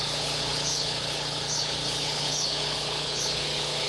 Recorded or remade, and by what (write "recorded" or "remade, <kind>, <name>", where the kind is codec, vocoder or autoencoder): remade, codec, HILCodec